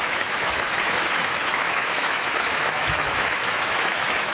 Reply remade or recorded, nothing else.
remade